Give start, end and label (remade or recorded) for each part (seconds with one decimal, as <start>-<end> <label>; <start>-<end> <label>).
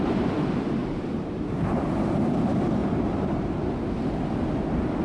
0.0-0.8 recorded; 0.8-1.8 remade; 1.8-2.8 recorded; 2.8-3.6 remade; 3.6-5.0 recorded